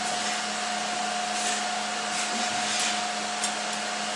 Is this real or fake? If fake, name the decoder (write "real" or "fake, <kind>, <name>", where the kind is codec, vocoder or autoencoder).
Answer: real